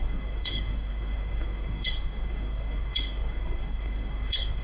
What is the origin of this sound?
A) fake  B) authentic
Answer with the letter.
A